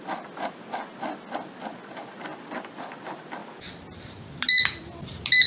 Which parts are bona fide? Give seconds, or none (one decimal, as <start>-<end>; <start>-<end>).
0.0-5.5